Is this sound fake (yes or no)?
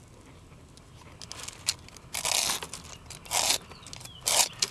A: no